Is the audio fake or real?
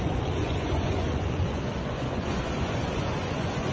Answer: fake